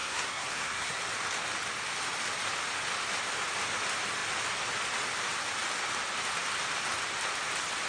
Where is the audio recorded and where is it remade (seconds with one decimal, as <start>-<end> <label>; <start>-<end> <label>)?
0.0-1.0 remade; 1.0-7.9 recorded